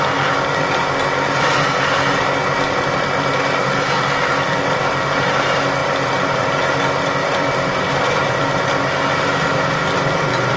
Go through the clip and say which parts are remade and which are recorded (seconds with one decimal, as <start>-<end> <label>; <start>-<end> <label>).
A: 0.0-5.8 recorded; 5.8-6.5 remade; 6.5-7.2 recorded; 7.2-8.3 remade; 8.3-10.6 recorded